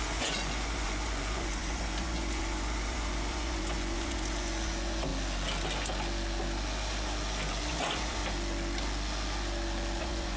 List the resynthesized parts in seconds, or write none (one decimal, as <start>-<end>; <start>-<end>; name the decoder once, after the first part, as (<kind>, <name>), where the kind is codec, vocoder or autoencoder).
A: 0.0-5.1 (vocoder, Vocos); 7.5-8.2; 10.0-10.4